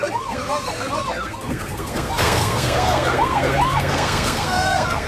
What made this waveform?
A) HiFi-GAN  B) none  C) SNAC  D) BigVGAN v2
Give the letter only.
C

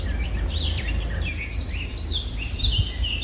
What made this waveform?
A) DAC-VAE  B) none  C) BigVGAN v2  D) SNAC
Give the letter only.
B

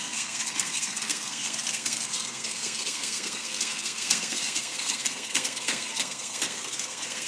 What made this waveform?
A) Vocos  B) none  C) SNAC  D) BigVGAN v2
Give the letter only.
C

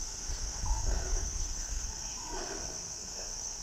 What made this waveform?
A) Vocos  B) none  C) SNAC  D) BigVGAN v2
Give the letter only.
C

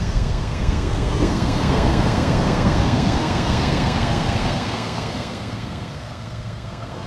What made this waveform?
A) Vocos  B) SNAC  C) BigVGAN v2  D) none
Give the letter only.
B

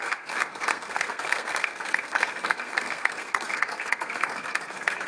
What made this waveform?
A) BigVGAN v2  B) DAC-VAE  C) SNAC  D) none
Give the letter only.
C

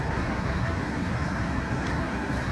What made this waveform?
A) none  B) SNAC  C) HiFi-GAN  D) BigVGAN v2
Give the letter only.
B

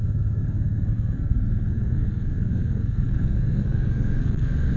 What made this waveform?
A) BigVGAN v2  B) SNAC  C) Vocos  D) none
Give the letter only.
B